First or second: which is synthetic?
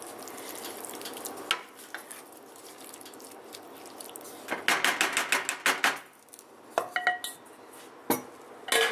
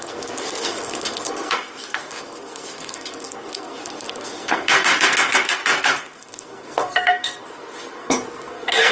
second